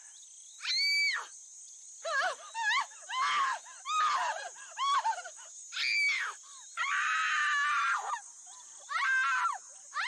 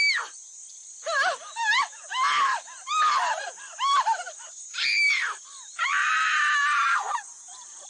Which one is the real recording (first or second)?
first